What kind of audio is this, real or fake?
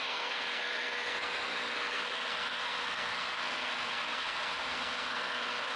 fake